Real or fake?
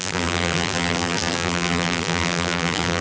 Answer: fake